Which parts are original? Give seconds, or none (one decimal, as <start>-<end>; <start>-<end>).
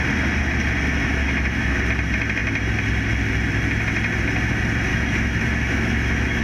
0.0-1.2; 1.8-4.9